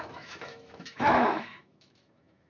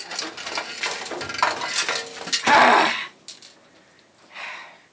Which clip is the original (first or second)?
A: second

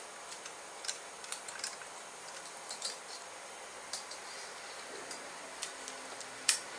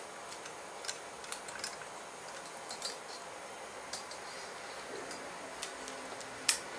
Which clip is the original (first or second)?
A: second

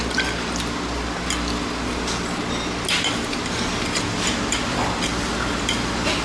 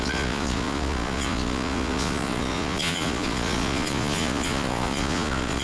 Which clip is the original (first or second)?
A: first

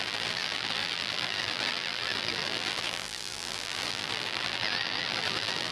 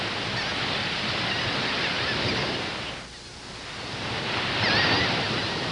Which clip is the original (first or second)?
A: second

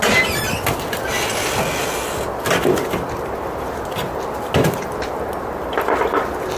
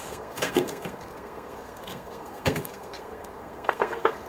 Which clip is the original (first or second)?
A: first